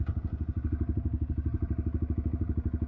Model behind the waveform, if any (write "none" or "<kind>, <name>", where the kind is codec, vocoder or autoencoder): none